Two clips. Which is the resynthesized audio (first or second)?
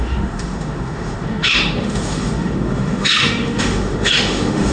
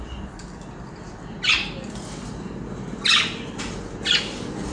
first